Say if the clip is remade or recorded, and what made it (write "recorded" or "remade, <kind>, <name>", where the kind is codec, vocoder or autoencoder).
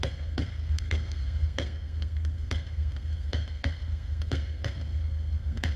remade, codec, SNAC